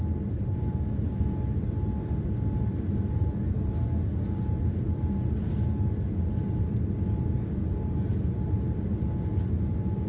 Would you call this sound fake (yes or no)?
no